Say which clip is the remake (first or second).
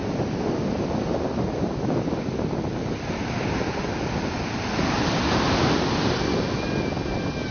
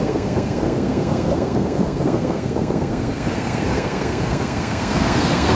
second